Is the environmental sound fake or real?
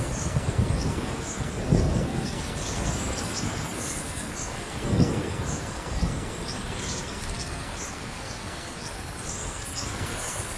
fake